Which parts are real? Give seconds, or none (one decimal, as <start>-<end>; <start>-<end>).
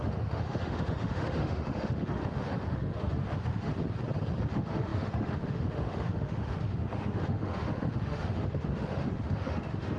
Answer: 3.7-4.5